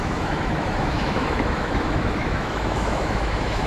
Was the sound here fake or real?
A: fake